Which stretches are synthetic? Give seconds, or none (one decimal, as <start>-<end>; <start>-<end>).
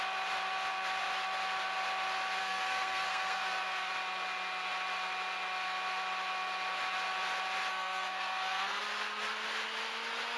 2.4-3.9; 7.7-8.8